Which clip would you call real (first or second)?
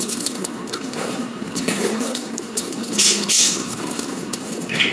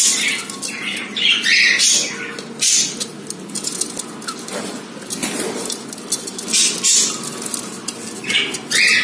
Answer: second